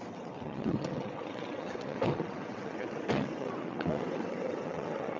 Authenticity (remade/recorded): remade